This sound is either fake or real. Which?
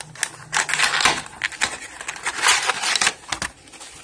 real